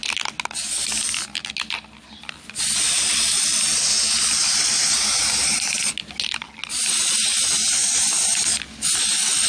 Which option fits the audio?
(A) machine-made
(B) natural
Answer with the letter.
B